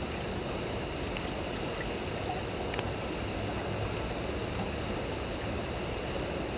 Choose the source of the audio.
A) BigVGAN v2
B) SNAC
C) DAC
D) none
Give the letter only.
D